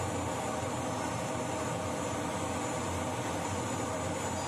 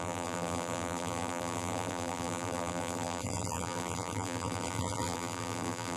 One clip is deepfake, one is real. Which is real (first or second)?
first